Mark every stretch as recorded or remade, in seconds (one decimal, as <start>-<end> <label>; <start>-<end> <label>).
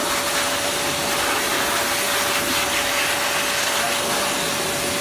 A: 0.0-1.0 remade; 1.0-5.0 recorded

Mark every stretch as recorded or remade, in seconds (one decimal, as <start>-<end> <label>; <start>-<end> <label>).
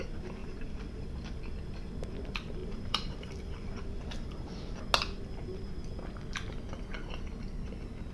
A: 0.0-0.4 recorded; 0.4-1.1 remade; 1.1-2.6 recorded; 2.6-4.8 remade; 4.8-8.1 recorded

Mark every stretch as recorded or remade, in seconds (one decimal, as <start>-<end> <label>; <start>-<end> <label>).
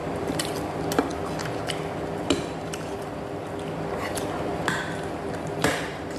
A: 0.0-0.5 remade; 0.5-4.5 recorded; 4.5-6.2 remade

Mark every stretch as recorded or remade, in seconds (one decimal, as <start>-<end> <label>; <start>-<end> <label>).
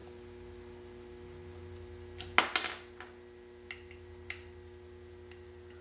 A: 0.0-5.8 recorded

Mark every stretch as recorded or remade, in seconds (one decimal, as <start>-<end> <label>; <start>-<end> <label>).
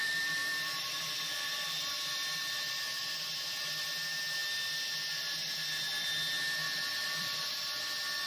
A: 0.0-1.9 remade; 1.9-2.4 recorded; 2.4-3.0 remade; 3.0-6.6 recorded; 6.6-7.5 remade; 7.5-8.3 recorded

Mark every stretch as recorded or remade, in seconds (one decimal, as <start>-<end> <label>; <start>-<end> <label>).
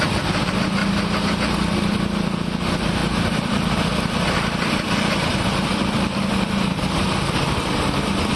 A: 0.0-0.8 remade; 0.8-1.8 recorded; 1.8-8.4 remade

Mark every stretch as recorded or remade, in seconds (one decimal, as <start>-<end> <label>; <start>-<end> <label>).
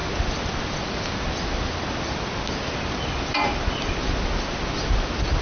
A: 0.0-5.4 recorded